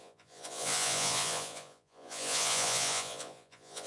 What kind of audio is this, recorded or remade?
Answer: remade